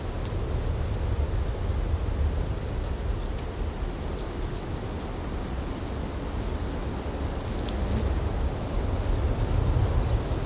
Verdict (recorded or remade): recorded